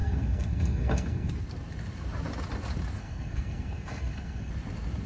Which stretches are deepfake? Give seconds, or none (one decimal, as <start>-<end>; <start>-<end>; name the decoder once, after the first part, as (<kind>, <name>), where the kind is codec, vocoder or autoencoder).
0.0-1.3 (codec, SNAC); 3.0-4.5